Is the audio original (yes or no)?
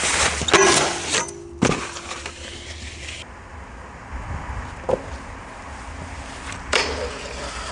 yes